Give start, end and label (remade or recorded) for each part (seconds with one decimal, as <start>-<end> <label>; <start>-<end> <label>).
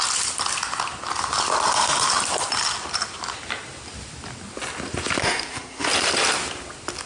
0.0-5.2 recorded; 5.2-5.9 remade; 5.9-7.1 recorded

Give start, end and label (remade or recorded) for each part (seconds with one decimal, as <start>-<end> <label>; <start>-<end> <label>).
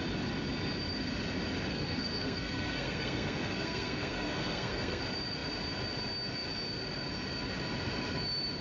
0.0-1.7 recorded; 1.7-5.0 remade; 5.0-8.6 recorded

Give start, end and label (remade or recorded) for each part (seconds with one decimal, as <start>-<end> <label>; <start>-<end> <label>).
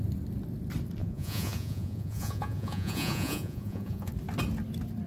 0.0-1.0 recorded; 1.0-4.1 remade; 4.1-5.1 recorded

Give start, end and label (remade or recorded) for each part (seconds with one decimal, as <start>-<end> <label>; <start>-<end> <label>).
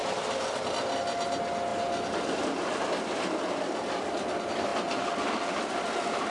0.0-6.3 recorded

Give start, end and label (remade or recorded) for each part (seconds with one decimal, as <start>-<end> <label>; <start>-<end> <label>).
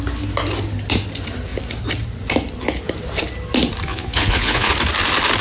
0.0-3.9 recorded; 3.9-4.7 remade; 4.7-5.4 recorded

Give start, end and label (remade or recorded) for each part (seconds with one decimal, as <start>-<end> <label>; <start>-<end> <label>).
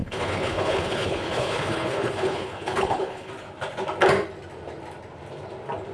0.0-3.3 remade; 3.3-5.9 recorded